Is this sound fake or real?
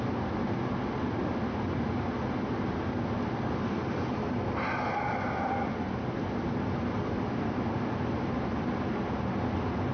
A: real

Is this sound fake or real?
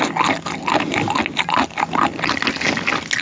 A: real